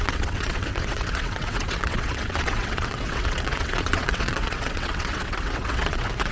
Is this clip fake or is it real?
fake